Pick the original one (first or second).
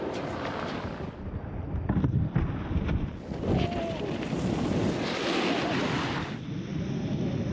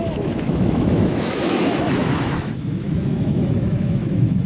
first